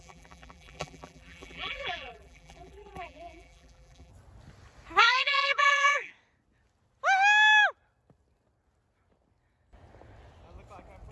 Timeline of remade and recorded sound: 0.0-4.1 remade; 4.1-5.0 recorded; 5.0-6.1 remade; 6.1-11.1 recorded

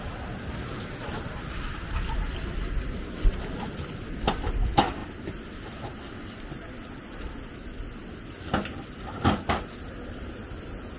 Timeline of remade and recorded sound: 0.0-5.0 recorded; 5.0-9.7 remade; 9.7-11.0 recorded

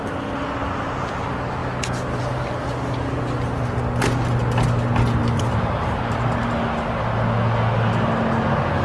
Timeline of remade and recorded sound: 0.0-5.2 recorded; 5.2-6.5 remade; 6.5-8.8 recorded

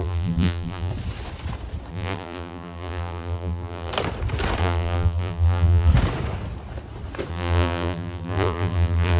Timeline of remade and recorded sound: 0.0-0.9 remade; 0.9-1.9 recorded; 1.9-3.9 remade; 3.9-4.6 recorded; 4.6-5.9 remade; 5.9-7.3 recorded; 7.3-9.2 remade

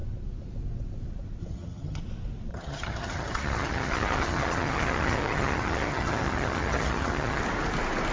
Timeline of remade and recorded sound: 0.0-1.4 recorded; 1.4-2.0 remade; 2.0-2.5 recorded; 2.5-7.4 remade; 7.4-8.1 recorded